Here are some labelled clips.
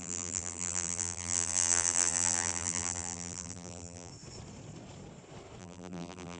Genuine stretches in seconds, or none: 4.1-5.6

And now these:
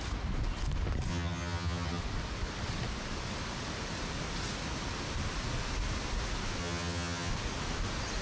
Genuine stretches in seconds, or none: 0.0-1.1; 2.0-6.6; 7.3-8.2

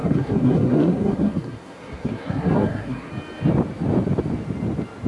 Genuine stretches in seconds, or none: 3.1-5.1